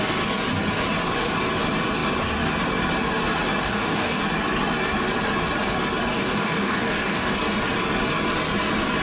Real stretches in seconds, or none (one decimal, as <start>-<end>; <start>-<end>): 0.0-3.6; 4.2-6.2; 7.3-9.0